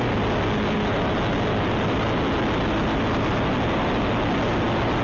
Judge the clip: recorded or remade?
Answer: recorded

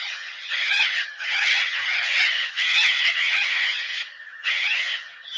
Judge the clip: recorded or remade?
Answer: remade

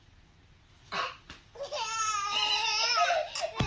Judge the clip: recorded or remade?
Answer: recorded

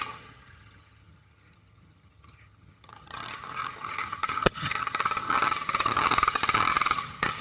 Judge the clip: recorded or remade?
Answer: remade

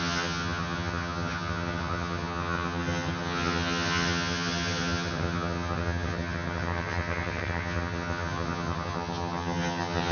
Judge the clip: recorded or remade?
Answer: remade